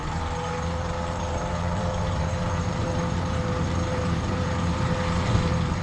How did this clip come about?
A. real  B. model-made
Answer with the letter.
B